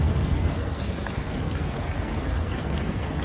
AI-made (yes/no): yes